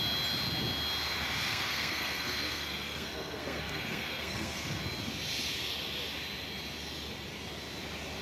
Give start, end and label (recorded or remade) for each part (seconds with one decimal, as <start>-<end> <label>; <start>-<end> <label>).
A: 0.0-1.5 recorded; 1.5-4.8 remade; 4.8-8.2 recorded